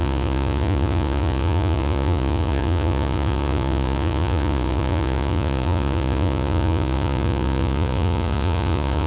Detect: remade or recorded remade